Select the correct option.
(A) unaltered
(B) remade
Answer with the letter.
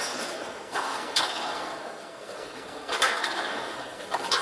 B